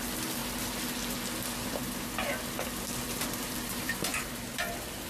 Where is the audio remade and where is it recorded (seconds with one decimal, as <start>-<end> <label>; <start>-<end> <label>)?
0.0-0.4 remade; 0.4-1.4 recorded; 1.4-5.1 remade